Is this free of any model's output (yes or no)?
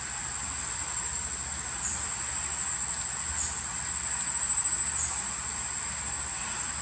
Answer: yes